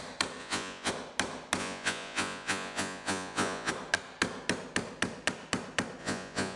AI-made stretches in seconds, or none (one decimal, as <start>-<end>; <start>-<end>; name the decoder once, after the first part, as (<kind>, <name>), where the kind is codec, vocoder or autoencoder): 0.4-0.9 (vocoder, Vocos); 1.6-3.7; 6.0-6.6